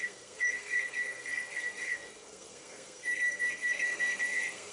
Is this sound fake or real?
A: fake